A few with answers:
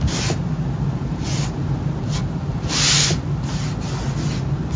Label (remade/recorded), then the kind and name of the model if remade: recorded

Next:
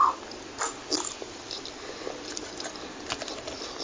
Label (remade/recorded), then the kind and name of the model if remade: recorded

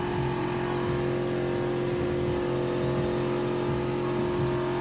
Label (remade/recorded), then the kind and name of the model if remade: recorded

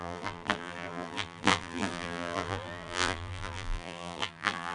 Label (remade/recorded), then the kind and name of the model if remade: remade, vocoder, BigVGAN v2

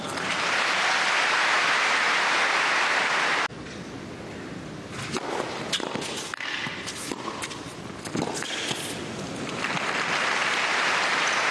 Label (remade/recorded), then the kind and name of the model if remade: recorded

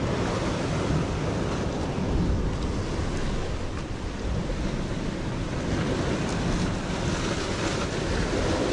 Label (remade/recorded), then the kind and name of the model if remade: recorded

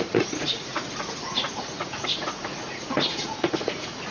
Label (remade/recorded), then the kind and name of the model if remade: remade, vocoder, Vocos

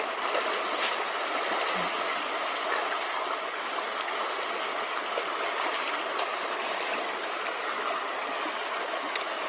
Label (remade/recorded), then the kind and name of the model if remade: recorded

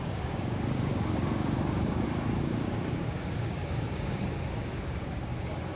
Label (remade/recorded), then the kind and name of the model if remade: remade, codec, DAC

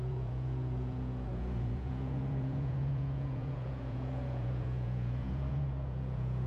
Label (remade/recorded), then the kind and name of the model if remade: remade, vocoder, Vocos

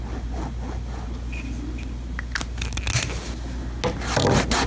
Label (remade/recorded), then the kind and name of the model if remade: recorded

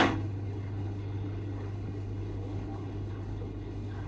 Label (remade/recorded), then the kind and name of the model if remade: remade, codec, HILCodec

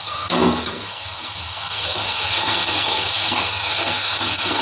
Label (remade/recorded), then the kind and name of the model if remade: remade, codec, SNAC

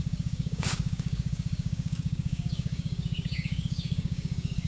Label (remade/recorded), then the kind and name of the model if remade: remade, codec, DAC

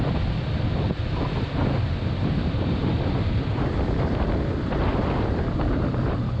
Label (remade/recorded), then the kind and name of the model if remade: remade, vocoder, BigVGAN v2